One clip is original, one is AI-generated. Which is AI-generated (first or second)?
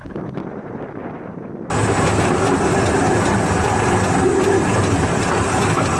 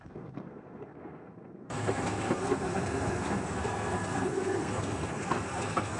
second